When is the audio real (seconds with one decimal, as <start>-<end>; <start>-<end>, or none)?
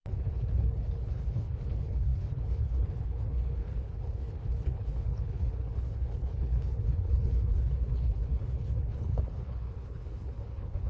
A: none